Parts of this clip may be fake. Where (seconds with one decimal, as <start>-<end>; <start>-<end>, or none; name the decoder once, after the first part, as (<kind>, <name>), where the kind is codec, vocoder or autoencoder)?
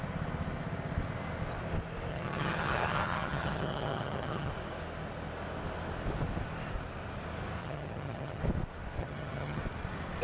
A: 2.1-4.5 (vocoder, HiFi-GAN); 7.6-8.4; 9.0-9.6